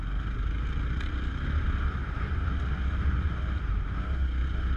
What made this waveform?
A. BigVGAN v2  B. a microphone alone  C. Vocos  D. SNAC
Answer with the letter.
B